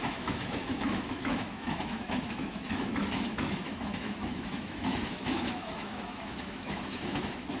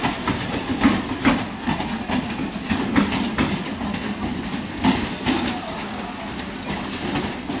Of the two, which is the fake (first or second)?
first